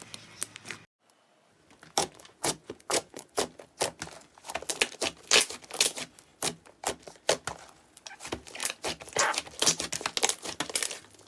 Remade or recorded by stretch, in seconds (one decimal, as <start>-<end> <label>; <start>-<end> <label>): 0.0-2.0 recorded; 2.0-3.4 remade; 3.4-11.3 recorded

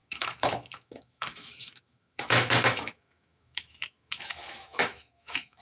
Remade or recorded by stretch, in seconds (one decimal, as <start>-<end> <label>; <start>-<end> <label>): 0.0-5.6 remade

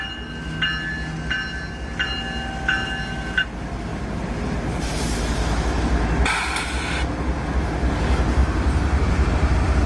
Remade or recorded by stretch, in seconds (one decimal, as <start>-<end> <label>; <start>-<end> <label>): 0.0-3.9 recorded; 3.9-5.8 remade; 5.8-8.4 recorded; 8.4-9.3 remade; 9.3-9.9 recorded

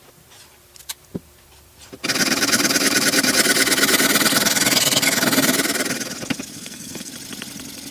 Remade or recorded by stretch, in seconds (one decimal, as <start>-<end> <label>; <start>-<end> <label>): 0.0-6.5 recorded; 6.5-7.1 remade; 7.1-7.9 recorded